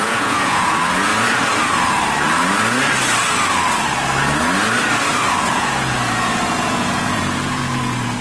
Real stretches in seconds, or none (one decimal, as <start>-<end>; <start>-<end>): 1.1-5.3; 7.6-8.2